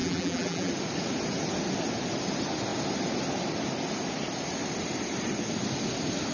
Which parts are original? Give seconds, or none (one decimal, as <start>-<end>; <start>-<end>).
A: 0.7-6.3